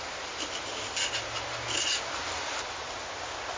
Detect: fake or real real